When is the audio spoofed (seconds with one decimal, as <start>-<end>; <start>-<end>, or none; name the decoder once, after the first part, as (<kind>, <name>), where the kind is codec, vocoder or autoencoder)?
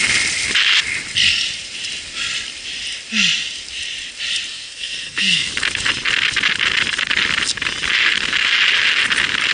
4.5-5.5 (codec, SNAC)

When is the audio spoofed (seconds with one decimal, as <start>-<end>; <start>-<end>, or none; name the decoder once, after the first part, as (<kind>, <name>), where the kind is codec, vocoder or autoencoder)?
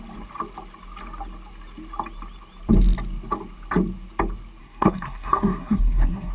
4.6-6.3 (codec, SNAC)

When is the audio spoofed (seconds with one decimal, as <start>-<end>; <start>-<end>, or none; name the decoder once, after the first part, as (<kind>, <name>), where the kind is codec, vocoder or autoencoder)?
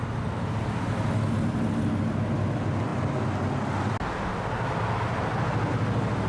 none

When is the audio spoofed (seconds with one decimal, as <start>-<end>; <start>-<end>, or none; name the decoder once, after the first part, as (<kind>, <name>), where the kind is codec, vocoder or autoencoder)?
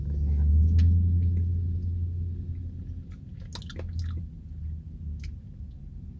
none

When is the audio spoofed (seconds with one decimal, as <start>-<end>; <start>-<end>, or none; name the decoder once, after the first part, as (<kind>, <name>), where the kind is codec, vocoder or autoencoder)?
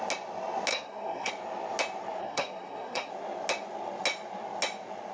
0.7-1.3 (codec, SNAC); 2.2-3.1